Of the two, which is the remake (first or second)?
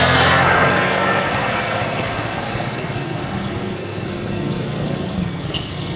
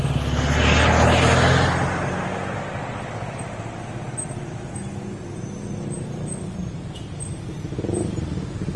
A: first